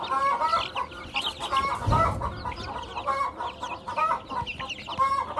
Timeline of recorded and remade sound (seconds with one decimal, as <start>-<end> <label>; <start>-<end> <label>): 0.0-5.4 recorded